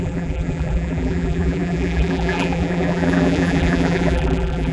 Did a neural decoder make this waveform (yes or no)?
yes